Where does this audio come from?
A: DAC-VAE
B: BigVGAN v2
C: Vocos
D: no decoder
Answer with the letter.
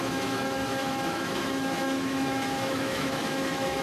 A